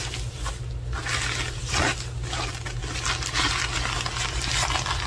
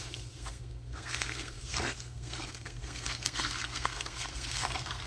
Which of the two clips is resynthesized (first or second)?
second